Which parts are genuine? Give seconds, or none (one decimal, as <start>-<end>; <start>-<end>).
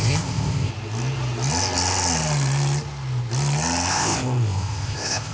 0.7-3.9